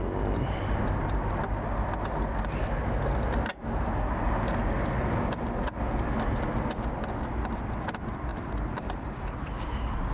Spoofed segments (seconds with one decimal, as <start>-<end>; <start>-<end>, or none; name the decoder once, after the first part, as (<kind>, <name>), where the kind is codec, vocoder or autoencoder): 8.3-9.6 (vocoder, BigVGAN v2)